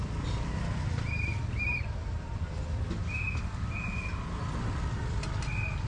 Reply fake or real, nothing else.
real